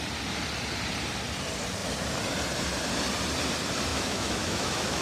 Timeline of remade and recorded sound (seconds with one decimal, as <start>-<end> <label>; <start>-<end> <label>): 0.0-3.9 recorded; 3.9-5.0 remade